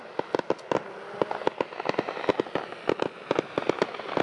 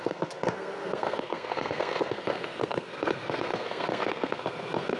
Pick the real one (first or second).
first